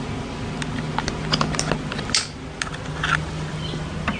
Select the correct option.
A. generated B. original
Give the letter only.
B